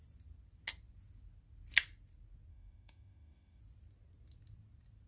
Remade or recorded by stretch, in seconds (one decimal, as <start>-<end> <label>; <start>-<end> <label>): 0.0-2.5 recorded; 2.5-3.6 remade; 3.6-5.1 recorded